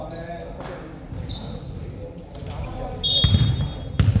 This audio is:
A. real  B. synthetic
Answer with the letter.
A